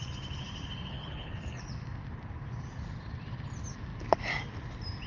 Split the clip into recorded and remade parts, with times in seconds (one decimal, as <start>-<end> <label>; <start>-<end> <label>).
0.0-0.9 recorded; 0.9-1.6 remade; 1.6-5.1 recorded